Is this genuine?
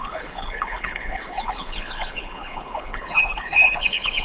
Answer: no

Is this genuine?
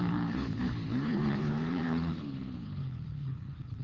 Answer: no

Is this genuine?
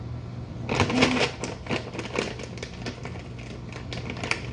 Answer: yes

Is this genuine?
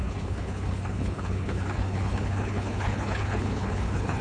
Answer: no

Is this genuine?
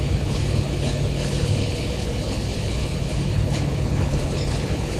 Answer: no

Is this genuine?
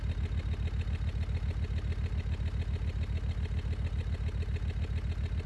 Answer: yes